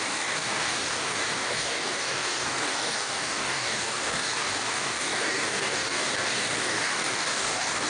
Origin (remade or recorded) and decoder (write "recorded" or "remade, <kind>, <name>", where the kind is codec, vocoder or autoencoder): remade, codec, DAC